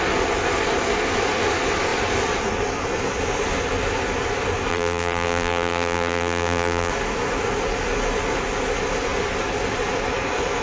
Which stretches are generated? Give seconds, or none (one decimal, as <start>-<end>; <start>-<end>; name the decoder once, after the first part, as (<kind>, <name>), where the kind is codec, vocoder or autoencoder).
4.7-6.9 (vocoder, BigVGAN v2)